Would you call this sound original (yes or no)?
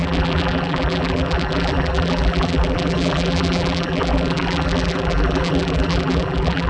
no